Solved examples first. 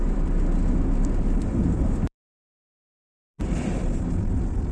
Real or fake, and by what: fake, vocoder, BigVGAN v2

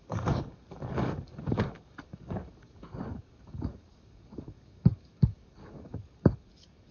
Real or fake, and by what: fake, codec, DAC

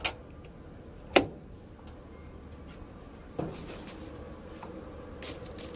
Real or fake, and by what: real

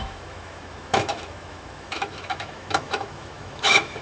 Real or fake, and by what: fake, autoencoder, DAC-VAE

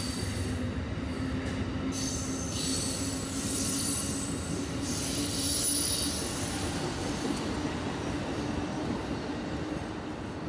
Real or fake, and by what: real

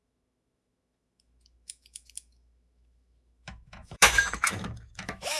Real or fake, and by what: fake, autoencoder, DAC-VAE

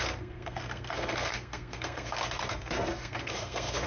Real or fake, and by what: fake, codec, SNAC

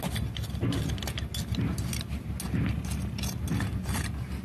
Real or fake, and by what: real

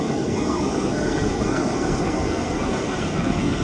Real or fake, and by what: fake, codec, SNAC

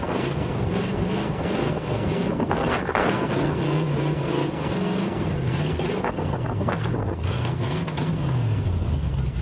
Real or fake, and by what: fake, codec, SNAC